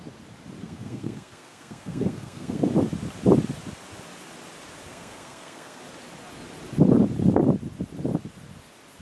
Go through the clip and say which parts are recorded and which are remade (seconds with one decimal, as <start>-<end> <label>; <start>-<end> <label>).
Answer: 0.0-0.6 recorded; 0.6-2.6 remade; 2.6-4.9 recorded; 4.9-5.8 remade; 5.8-9.0 recorded